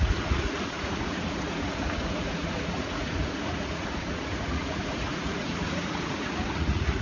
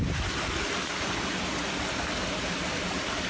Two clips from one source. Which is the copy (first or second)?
first